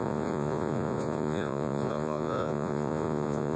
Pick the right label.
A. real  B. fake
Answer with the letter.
B